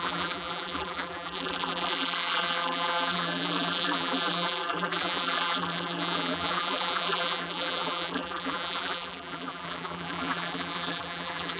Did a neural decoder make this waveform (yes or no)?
yes